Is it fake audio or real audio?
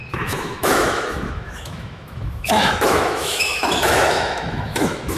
fake